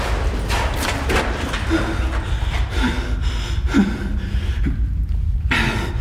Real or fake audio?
real